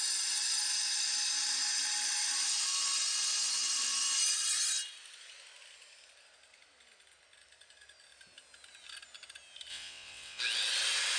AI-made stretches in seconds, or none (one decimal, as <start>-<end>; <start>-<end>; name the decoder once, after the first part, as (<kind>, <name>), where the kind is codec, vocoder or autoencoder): 9.7-10.4 (vocoder, WaveNeXt)